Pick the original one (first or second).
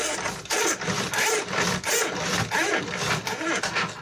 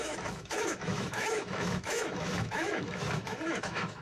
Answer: first